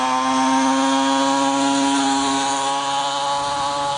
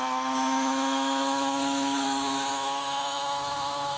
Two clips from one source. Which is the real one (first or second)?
first